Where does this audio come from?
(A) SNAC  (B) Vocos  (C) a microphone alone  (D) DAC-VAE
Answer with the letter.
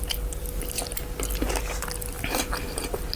C